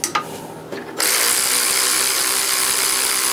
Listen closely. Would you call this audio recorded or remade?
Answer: recorded